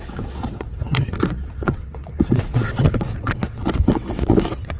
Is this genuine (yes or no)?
no